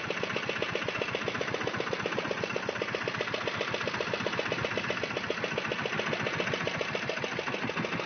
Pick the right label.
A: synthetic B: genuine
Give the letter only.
B